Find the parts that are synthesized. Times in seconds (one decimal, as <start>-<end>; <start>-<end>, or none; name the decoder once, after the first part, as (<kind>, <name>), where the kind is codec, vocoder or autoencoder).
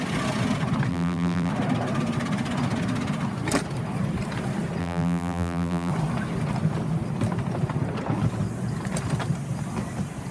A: 0.9-1.5 (vocoder, BigVGAN v2); 4.8-5.9